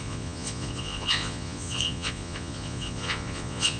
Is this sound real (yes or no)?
no